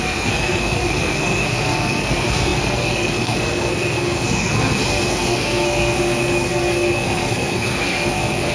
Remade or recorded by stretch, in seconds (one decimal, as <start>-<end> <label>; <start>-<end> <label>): 0.0-8.5 remade